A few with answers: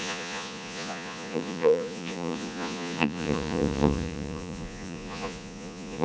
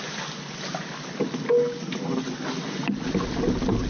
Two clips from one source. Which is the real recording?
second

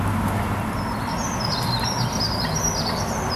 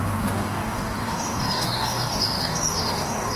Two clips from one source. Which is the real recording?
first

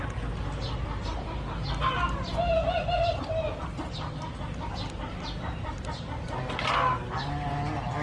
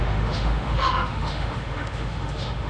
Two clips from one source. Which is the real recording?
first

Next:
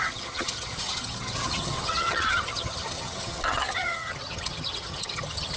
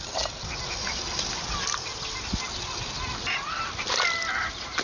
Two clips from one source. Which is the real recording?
second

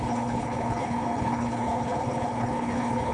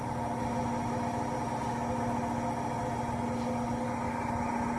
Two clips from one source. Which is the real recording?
second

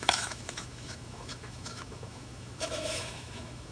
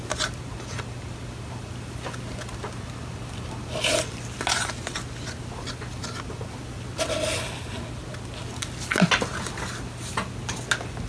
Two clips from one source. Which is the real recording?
second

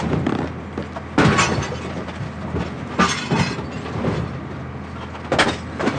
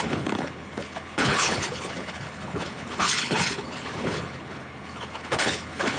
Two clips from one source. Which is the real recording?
first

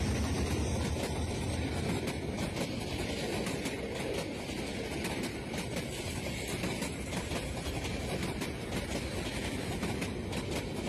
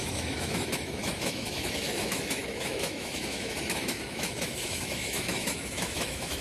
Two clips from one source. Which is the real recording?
first